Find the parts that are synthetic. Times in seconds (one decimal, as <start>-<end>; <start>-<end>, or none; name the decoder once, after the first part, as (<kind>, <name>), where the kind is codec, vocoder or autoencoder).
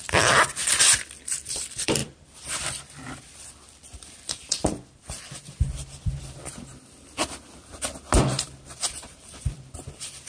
0.0-6.7 (vocoder, BigVGAN v2); 8.2-10.3